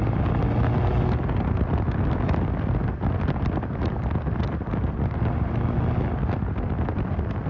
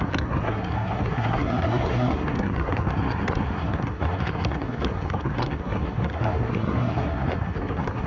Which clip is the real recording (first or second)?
first